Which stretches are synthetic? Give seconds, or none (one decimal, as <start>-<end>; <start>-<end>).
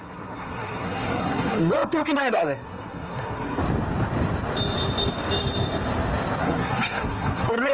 0.0-3.6; 6.4-7.7